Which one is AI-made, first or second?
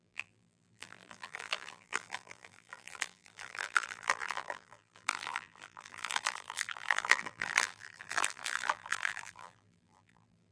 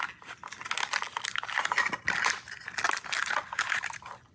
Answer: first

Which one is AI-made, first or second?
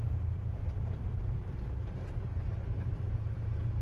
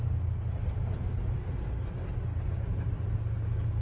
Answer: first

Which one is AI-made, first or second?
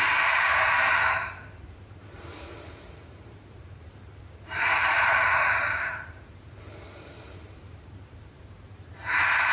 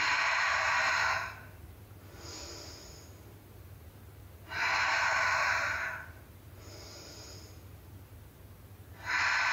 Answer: first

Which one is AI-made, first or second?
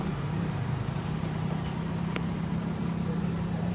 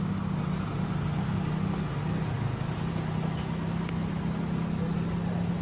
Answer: first